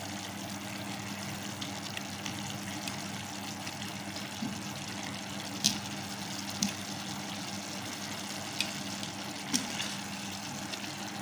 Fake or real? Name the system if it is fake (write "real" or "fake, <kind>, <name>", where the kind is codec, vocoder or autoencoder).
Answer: real